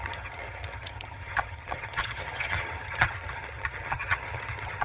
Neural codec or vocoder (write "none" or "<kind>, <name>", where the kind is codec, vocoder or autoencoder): vocoder, HiFi-GAN